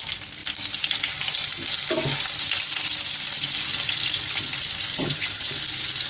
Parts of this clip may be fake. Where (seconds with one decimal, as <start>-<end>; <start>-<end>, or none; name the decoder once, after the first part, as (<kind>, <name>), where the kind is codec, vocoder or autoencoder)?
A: 4.9-5.5 (vocoder, HiFi-GAN)